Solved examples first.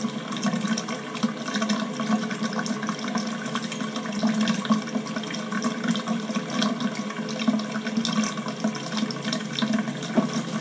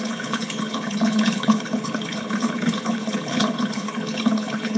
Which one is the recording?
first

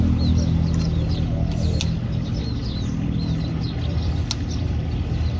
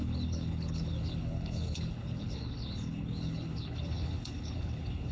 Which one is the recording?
first